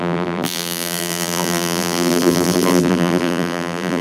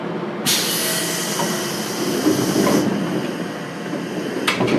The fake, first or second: first